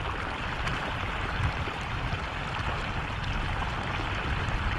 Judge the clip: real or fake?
real